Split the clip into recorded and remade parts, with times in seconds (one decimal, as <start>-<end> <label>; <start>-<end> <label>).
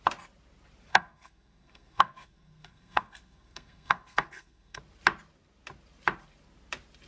0.0-0.9 recorded; 0.9-4.8 remade; 4.8-7.1 recorded